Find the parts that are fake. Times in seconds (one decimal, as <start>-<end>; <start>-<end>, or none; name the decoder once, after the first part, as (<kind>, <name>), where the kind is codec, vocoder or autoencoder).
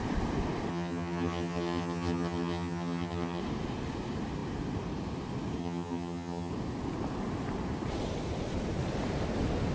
0.7-3.4 (vocoder, HiFi-GAN); 5.6-6.5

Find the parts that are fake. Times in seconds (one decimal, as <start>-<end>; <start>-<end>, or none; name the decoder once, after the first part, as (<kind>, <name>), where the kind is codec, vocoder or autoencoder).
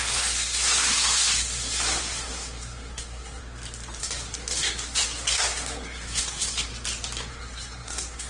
0.0-3.4 (codec, SNAC); 4.0-6.7; 7.3-8.3